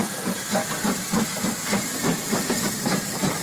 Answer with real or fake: real